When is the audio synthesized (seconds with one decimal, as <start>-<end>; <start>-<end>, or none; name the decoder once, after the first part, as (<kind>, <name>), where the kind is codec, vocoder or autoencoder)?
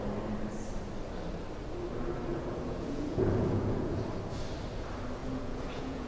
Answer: 2.3-4.0 (vocoder, Vocos); 5.2-6.1